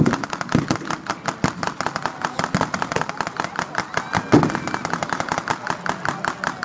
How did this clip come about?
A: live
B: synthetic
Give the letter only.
A